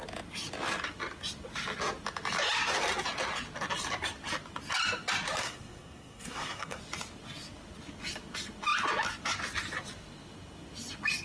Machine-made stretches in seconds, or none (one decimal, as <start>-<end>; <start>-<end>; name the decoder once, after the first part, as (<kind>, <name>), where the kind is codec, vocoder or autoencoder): 5.4-6.8 (codec, SNAC)